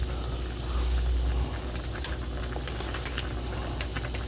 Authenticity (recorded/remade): recorded